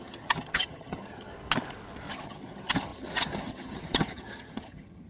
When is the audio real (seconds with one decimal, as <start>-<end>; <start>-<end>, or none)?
1.3-2.1

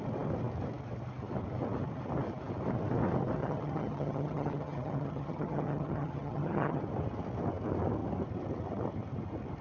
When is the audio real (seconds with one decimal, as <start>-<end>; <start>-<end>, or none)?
0.0-3.4; 6.8-9.6

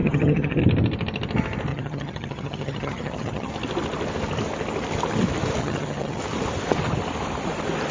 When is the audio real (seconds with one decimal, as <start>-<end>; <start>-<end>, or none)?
0.6-1.7; 3.5-5.6; 6.2-7.9

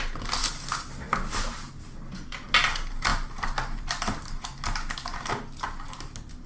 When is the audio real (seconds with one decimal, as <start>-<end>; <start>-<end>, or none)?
0.0-6.5

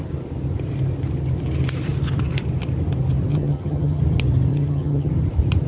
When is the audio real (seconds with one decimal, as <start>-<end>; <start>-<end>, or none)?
0.0-3.3; 4.0-4.5; 5.1-5.7

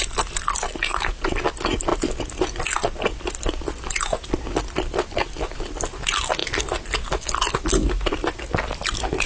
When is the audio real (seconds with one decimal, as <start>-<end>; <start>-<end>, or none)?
0.0-9.3